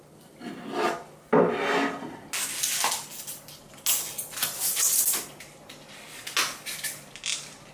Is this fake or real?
real